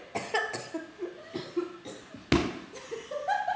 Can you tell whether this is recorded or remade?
recorded